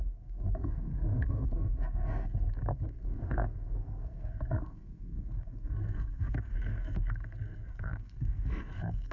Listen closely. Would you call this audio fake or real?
fake